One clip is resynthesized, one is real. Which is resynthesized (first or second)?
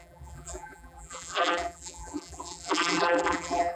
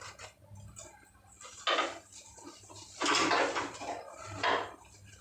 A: first